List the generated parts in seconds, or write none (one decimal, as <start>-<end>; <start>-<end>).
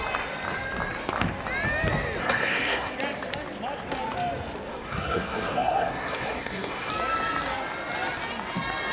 2.2-2.9; 4.7-6.9